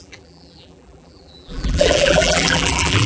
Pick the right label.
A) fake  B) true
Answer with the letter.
A